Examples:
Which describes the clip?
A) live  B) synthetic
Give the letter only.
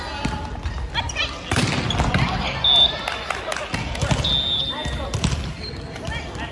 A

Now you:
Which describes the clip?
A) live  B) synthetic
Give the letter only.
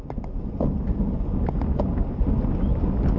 A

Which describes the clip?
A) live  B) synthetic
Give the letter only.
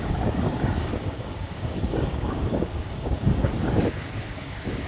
B